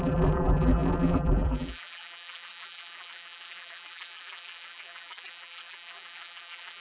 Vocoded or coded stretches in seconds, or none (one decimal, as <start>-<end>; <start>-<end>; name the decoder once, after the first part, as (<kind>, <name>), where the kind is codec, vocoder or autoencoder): 0.0-6.8 (vocoder, BigVGAN v2)